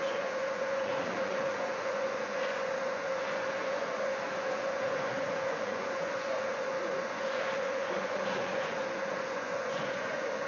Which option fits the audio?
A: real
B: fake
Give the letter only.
B